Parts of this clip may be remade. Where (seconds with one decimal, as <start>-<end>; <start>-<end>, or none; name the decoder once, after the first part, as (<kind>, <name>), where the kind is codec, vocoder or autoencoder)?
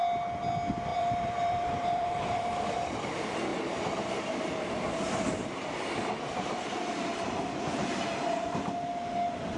0.9-2.6 (vocoder, BigVGAN v2); 3.5-5.9